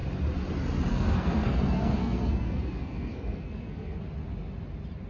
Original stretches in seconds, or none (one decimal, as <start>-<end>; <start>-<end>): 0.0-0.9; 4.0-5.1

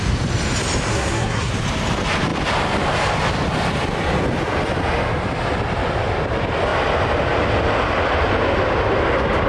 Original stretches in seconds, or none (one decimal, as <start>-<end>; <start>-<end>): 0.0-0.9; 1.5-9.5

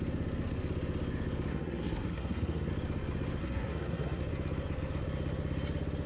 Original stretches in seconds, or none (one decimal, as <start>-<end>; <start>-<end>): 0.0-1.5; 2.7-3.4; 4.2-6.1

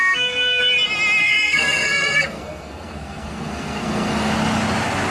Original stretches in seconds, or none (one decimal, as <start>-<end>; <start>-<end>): 0.6-1.2; 4.3-5.1

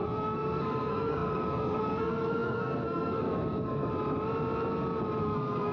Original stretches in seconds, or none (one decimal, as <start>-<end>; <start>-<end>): 3.9-5.2